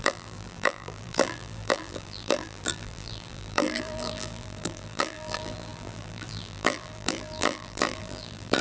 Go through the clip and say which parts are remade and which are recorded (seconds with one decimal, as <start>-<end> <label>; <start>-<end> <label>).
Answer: 0.0-8.6 remade